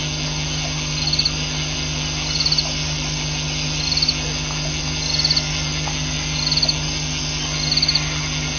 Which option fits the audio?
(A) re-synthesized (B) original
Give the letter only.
B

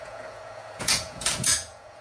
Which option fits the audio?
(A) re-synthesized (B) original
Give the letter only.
A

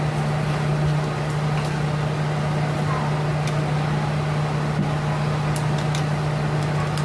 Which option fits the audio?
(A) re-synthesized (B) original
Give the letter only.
B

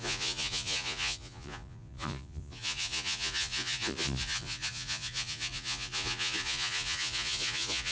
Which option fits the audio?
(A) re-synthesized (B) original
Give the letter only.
A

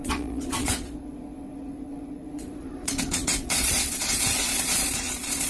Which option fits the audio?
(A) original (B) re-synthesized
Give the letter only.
B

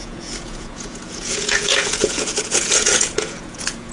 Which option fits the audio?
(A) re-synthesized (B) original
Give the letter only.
A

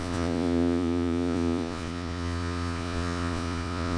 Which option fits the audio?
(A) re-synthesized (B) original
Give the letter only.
A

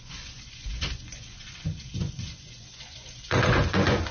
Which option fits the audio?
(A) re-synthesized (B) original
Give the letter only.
A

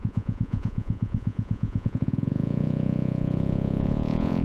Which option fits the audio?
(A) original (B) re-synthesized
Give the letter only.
B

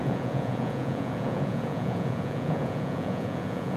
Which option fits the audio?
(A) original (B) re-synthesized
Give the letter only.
B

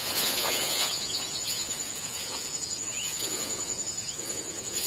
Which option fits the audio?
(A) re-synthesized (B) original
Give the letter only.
A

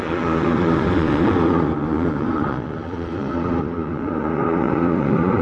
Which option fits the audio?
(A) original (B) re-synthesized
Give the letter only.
B